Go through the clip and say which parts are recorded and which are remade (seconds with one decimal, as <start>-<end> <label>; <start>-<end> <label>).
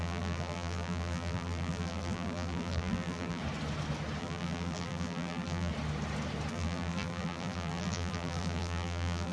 0.0-3.4 remade; 3.4-4.2 recorded; 4.2-5.7 remade; 5.7-6.5 recorded; 6.5-9.3 remade